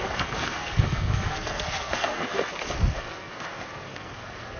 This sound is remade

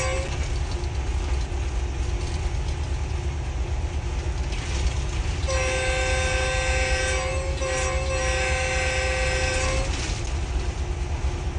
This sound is recorded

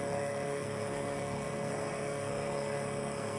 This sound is remade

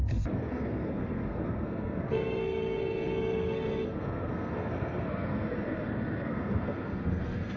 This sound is remade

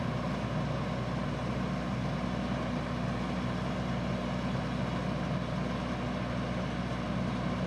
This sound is recorded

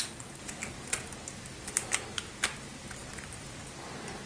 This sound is recorded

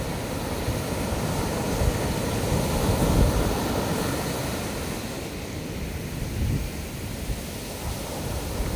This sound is recorded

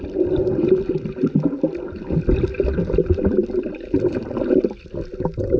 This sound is recorded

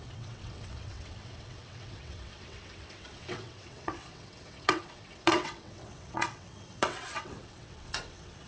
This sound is remade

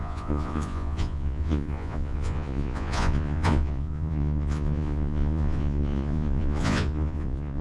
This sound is remade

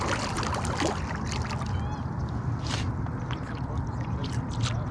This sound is recorded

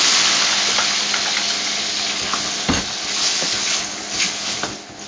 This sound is recorded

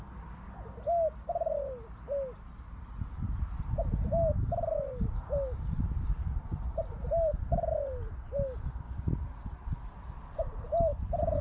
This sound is recorded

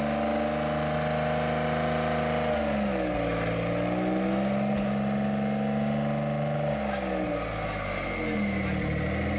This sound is recorded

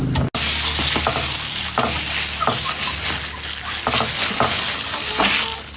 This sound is recorded